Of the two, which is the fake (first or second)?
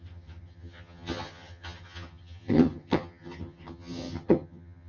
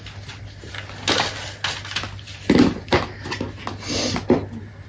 first